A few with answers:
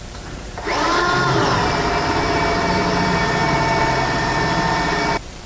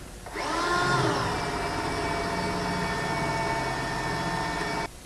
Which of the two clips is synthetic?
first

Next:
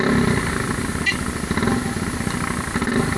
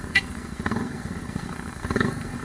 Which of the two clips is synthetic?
second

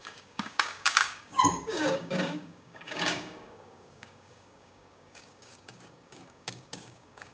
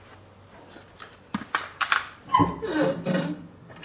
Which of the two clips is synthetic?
first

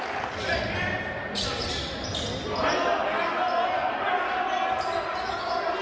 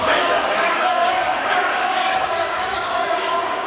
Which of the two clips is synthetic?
second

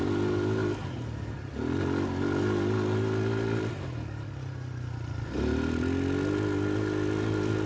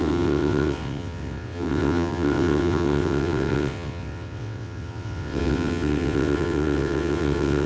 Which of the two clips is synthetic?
second